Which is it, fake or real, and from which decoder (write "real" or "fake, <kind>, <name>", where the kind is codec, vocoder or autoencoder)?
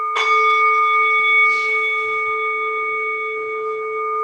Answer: real